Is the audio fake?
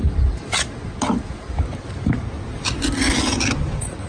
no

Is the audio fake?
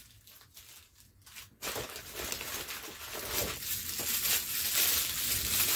no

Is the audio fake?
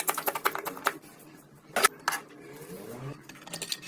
no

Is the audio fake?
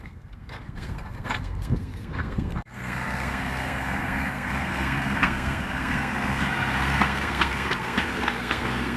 yes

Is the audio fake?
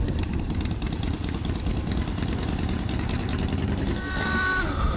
yes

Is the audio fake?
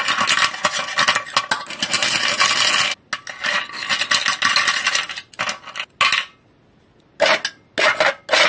no